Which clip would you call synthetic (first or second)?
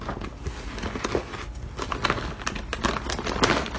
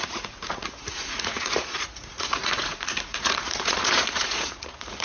second